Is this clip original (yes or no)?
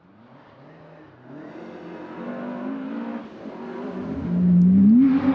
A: yes